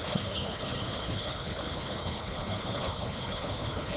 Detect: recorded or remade remade